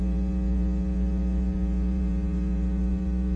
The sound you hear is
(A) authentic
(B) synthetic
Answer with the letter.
B